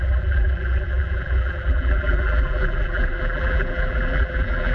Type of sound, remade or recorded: remade